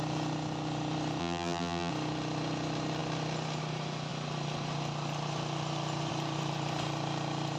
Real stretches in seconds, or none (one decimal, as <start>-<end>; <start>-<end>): 0.0-1.2; 1.9-7.6